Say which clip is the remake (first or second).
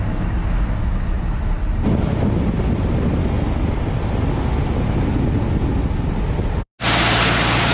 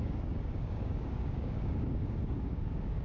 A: second